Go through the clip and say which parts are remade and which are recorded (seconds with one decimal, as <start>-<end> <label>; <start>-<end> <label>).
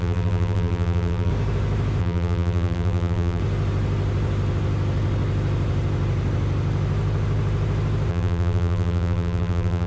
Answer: 0.0-1.3 remade; 1.3-2.0 recorded; 2.0-3.4 remade; 3.4-8.1 recorded; 8.1-9.9 remade